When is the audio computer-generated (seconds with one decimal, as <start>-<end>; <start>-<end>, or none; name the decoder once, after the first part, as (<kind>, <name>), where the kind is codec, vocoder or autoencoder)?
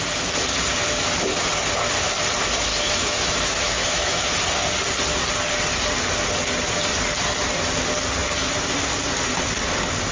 2.7-4.3 (autoencoder, DAC-VAE)